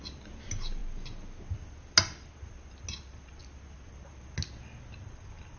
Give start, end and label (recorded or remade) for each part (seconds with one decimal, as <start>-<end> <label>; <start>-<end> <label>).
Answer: 0.0-5.6 recorded